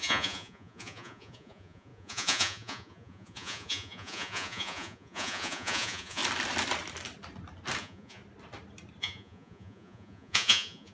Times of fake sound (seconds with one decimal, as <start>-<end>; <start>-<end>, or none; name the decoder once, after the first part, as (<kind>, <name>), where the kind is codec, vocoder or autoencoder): 0.0-6.2 (vocoder, Vocos); 7.8-8.2; 9.0-10.9